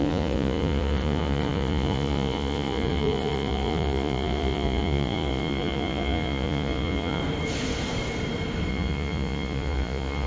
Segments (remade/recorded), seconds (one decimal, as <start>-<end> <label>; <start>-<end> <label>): 0.0-7.2 remade; 7.2-8.7 recorded; 8.7-10.3 remade